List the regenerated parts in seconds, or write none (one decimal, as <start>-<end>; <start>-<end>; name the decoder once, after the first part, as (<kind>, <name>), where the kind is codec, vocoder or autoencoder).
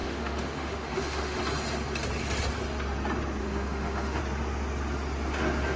0.0-1.4 (autoencoder, DAC-VAE); 3.4-4.2